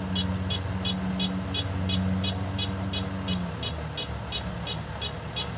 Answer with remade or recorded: recorded